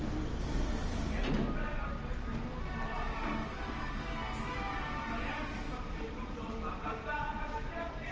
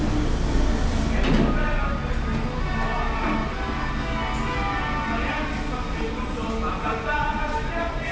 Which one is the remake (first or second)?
first